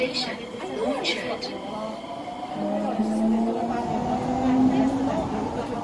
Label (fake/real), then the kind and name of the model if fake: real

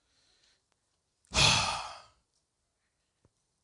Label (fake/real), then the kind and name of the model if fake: real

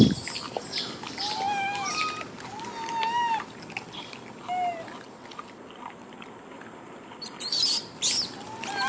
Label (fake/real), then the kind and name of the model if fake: real